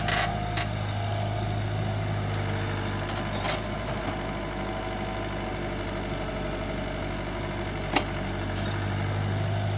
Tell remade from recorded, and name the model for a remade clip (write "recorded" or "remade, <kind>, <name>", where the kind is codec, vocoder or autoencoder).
recorded